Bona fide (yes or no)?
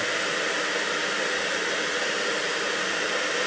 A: yes